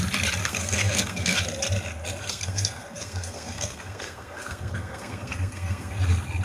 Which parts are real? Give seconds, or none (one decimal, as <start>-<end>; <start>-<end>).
0.0-0.4; 1.4-2.2; 6.0-6.4